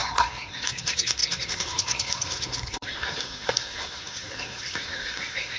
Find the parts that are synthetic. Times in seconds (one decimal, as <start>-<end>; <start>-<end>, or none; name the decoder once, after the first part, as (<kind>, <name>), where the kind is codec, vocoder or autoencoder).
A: 0.0-5.6 (codec, SNAC)